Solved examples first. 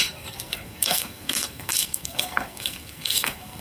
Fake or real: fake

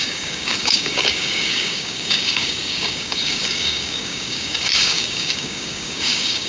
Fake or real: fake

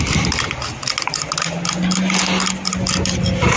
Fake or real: real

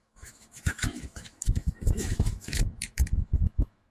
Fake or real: fake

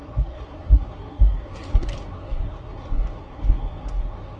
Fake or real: fake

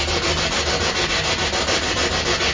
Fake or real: real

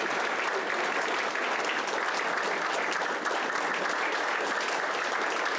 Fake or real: real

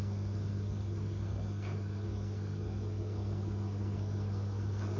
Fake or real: fake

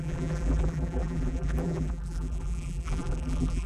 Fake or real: fake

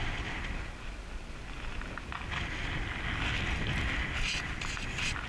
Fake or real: real